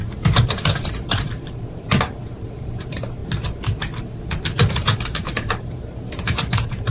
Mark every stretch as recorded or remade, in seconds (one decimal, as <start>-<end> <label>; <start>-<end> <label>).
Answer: 0.0-3.2 remade; 3.2-4.7 recorded; 4.7-6.9 remade